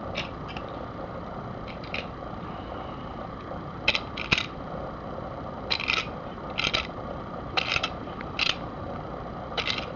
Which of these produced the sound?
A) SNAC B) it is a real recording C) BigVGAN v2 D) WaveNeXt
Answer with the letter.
B